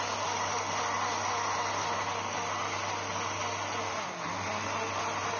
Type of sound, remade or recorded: recorded